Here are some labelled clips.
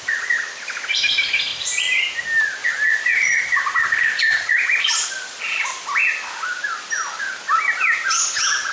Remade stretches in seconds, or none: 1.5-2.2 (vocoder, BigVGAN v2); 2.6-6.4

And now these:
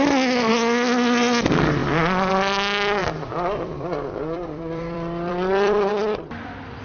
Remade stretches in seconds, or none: 3.0-5.9 (vocoder, BigVGAN v2)

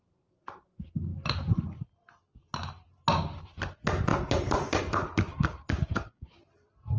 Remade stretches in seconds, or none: 5.3-6.4 (codec, DAC)